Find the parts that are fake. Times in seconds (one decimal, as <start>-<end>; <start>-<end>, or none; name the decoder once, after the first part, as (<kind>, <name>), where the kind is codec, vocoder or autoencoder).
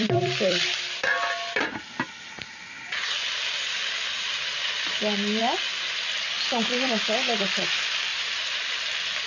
0.0-1.0 (vocoder, BigVGAN v2); 1.9-5.4; 6.1-9.3